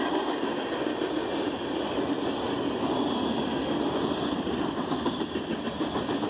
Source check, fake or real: real